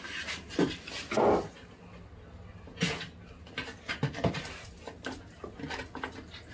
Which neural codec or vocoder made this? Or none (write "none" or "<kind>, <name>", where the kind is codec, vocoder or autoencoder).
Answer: none